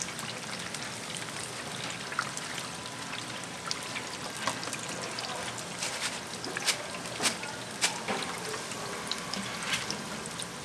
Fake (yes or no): no